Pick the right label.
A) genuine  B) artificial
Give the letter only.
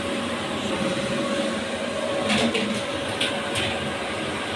A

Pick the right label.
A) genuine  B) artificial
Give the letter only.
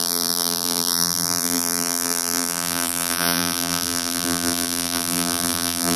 B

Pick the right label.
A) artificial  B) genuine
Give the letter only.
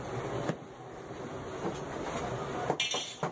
B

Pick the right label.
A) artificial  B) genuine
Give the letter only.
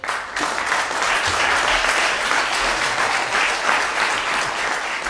B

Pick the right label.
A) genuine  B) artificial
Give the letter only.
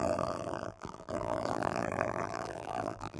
B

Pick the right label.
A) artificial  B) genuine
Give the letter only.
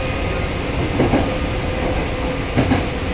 B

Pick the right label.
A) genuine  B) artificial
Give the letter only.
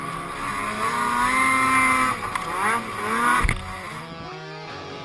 A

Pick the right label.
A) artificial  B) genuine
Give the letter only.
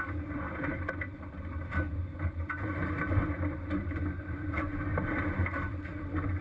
A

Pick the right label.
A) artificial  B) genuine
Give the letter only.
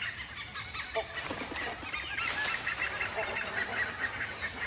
B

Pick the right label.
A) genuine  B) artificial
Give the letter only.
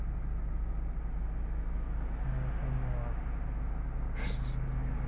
A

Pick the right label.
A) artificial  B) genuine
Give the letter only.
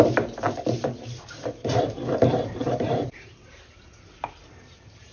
A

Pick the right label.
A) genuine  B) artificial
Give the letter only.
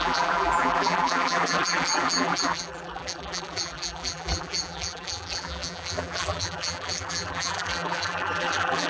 B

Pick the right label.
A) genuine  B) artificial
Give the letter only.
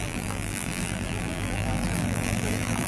B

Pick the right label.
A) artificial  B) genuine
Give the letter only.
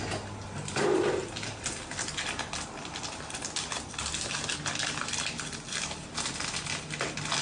B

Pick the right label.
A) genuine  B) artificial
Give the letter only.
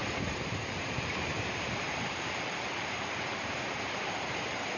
B